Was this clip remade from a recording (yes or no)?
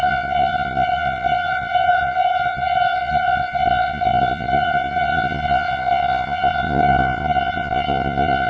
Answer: yes